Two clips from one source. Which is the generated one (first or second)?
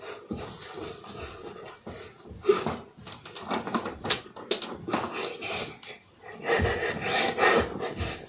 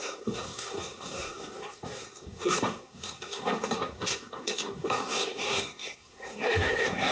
second